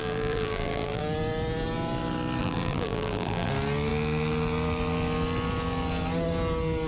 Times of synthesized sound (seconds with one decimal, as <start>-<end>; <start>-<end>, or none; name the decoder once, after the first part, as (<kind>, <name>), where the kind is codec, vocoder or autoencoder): 0.0-1.0 (vocoder, BigVGAN v2); 2.4-3.5